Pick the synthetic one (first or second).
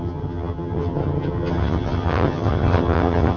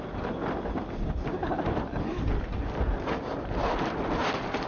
first